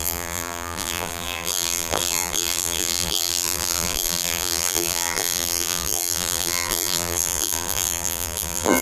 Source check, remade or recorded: remade